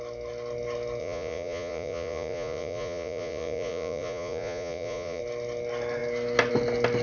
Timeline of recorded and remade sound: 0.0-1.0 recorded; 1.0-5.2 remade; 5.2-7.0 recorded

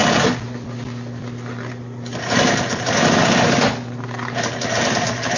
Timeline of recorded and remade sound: 0.0-5.4 recorded

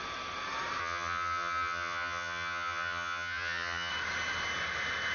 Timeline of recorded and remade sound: 0.0-0.8 recorded; 0.8-3.9 remade; 3.9-5.1 recorded

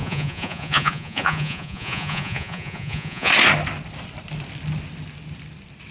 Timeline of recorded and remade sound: 0.0-3.3 remade; 3.3-5.9 recorded